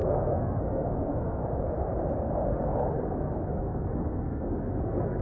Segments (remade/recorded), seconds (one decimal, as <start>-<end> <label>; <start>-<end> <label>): 0.0-1.4 remade; 1.4-3.5 recorded; 3.5-5.2 remade